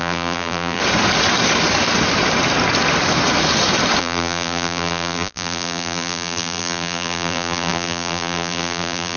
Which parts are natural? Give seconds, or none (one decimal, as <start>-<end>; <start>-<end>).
0.8-4.0